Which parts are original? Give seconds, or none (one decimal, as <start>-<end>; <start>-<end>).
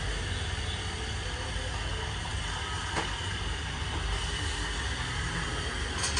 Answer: 0.0-6.2